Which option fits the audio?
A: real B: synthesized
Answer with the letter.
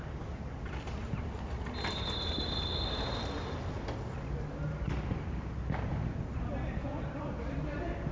A